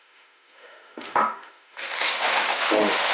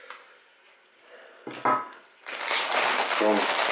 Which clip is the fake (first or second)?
first